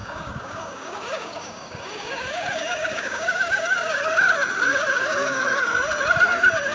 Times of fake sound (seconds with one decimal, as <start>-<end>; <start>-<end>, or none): 0.0-4.0; 4.7-5.4